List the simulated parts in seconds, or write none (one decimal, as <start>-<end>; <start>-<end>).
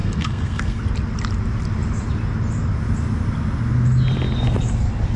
0.0-0.8